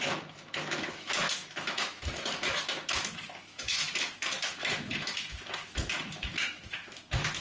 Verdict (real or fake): fake